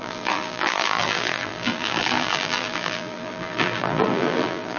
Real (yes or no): no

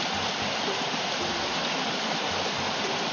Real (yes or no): no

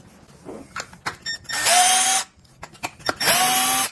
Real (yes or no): yes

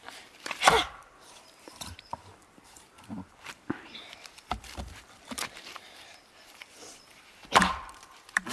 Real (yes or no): no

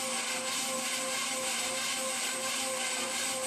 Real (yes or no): no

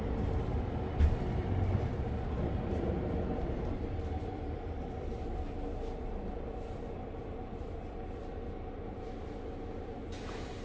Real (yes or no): no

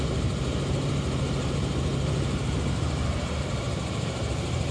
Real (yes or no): no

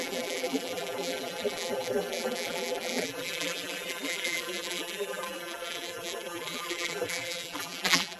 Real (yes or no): no